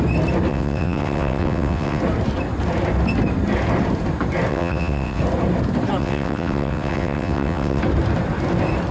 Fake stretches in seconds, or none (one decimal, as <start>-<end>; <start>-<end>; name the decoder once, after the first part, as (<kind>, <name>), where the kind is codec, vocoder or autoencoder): 0.5-2.0 (vocoder, WaveNeXt); 4.5-5.2; 6.0-7.8